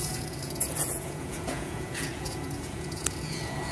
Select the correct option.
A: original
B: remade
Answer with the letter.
B